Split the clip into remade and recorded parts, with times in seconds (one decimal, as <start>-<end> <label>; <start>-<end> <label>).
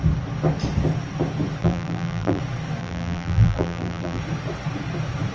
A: 0.0-1.6 recorded; 1.6-2.4 remade; 2.4-2.8 recorded; 2.8-4.2 remade; 4.2-5.3 recorded